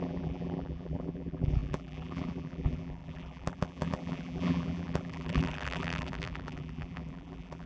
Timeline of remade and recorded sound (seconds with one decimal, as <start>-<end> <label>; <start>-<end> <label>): 0.0-7.7 remade